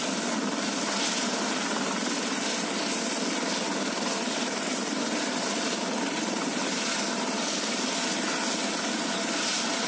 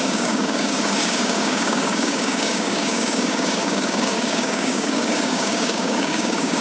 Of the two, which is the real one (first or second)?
first